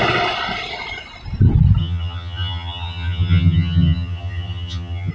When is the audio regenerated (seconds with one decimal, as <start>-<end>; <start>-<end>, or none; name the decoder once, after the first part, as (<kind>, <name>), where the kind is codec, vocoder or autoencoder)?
1.8-5.1 (vocoder, HiFi-GAN)